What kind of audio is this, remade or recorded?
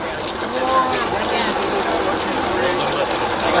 recorded